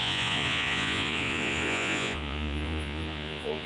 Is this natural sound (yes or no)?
no